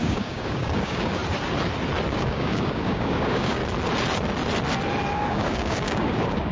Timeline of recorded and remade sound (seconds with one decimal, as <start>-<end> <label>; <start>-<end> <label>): 0.0-1.2 remade; 1.2-2.1 recorded; 2.1-3.6 remade; 3.6-5.3 recorded; 5.3-6.5 remade